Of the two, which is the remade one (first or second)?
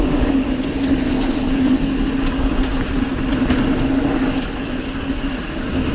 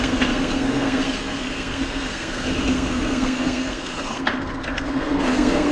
second